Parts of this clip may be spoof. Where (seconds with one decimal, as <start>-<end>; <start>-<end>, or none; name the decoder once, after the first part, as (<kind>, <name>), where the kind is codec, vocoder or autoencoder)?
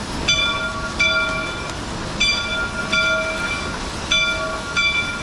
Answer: none